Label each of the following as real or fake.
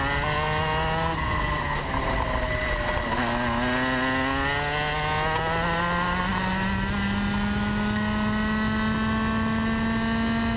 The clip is real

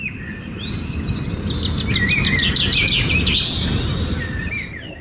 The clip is real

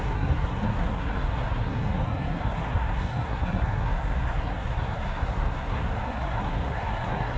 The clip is fake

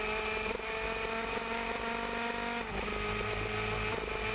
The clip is real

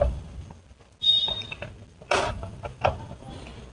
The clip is real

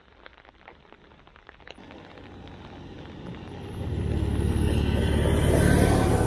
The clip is real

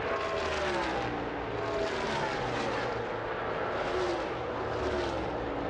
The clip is real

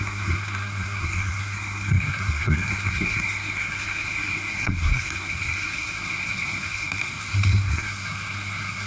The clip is fake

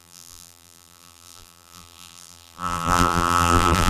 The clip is fake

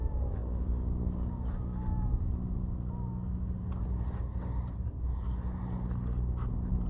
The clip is real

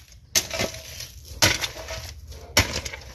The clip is real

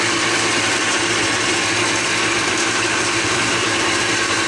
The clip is fake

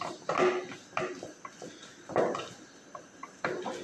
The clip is real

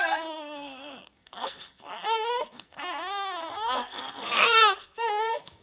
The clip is fake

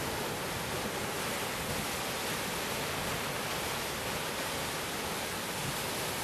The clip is real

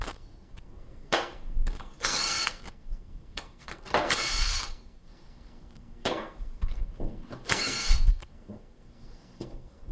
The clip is fake